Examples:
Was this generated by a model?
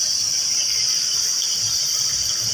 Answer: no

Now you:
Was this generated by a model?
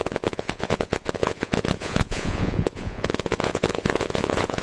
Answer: yes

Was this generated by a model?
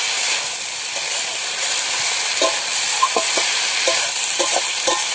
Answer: yes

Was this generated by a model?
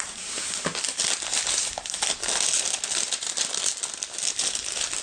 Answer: no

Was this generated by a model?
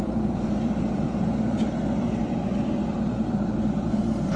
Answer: yes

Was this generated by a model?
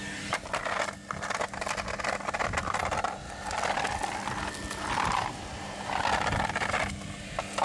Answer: no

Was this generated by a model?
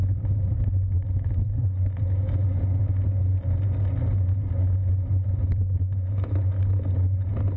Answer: no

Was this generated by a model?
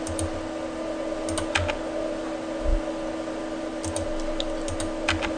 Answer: no